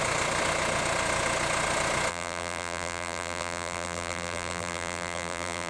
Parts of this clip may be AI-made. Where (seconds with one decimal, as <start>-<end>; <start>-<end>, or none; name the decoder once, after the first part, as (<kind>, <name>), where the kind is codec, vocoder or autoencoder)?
2.1-5.7 (vocoder, BigVGAN v2)

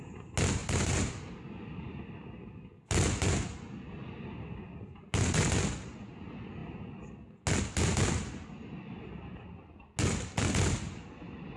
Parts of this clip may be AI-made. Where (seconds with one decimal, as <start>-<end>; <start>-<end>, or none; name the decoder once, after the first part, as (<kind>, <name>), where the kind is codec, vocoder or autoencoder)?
0.6-2.0 (vocoder, BigVGAN v2)

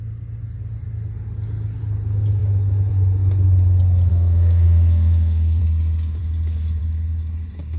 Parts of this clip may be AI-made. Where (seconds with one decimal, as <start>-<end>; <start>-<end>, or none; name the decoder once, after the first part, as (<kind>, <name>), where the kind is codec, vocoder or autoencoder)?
4.1-5.6 (codec, SNAC)

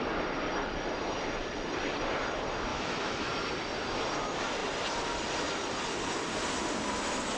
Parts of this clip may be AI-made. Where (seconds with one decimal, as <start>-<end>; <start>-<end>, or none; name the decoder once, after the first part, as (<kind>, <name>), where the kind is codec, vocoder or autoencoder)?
2.7-3.3 (autoencoder, DAC-VAE)

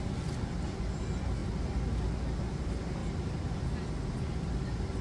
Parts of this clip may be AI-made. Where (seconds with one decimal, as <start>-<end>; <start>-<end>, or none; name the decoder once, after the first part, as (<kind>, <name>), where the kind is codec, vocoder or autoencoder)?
none

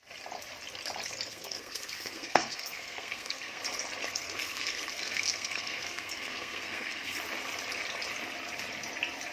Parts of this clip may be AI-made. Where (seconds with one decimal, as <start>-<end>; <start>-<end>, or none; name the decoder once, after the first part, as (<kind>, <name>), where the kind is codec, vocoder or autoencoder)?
1.3-3.6 (codec, SNAC); 4.0-7.2

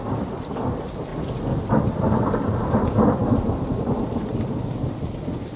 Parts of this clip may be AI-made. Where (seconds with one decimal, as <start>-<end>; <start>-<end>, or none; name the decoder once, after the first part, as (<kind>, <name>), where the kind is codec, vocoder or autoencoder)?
0.0-1.1 (vocoder, BigVGAN v2); 1.8-5.6

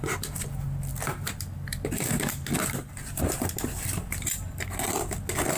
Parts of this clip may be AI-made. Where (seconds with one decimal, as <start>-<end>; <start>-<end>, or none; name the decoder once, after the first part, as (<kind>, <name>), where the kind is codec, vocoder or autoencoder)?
none